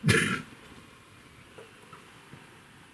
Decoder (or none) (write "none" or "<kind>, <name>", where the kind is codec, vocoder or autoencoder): none